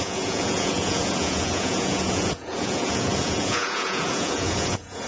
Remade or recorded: remade